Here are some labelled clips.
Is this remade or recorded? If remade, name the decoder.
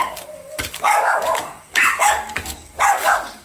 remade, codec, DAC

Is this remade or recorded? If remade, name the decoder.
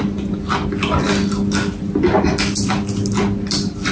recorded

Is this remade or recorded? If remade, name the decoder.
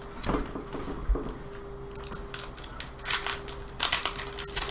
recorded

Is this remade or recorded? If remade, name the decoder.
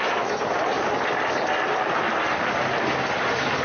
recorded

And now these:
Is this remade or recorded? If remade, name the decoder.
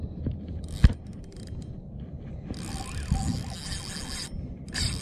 recorded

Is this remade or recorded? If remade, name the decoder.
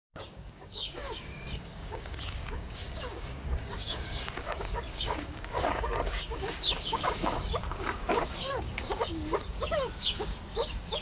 remade, codec, DAC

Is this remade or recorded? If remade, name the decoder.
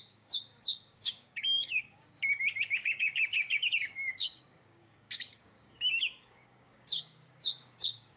remade, codec, DAC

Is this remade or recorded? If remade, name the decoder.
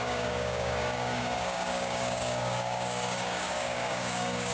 remade, codec, DAC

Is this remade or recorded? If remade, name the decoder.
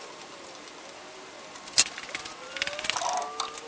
recorded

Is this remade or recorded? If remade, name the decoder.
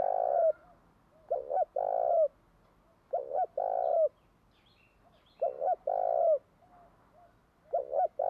recorded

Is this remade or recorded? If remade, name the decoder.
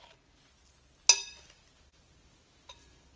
recorded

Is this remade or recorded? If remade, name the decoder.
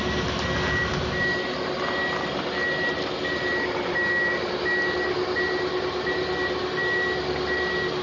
recorded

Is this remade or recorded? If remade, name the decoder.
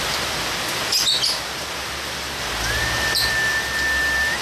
recorded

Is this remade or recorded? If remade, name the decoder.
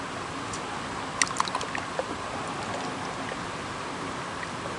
recorded